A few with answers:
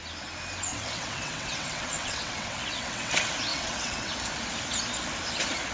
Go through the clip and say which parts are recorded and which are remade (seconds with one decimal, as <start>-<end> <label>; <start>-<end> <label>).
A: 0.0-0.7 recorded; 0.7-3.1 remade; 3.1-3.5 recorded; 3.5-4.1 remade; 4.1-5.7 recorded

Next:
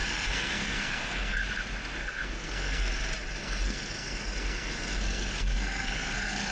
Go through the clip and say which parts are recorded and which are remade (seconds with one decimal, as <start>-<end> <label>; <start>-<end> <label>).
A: 0.0-1.4 remade; 1.4-2.0 recorded; 2.0-2.9 remade; 2.9-3.4 recorded; 3.4-6.5 remade

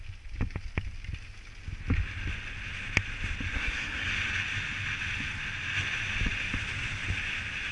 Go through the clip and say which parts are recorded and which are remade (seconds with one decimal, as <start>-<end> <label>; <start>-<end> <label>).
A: 0.0-3.5 recorded; 3.5-4.1 remade; 4.1-7.7 recorded

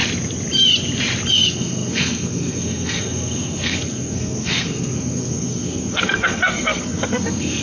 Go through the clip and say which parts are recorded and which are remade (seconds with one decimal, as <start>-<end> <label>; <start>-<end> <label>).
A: 0.0-1.3 recorded; 1.3-7.6 remade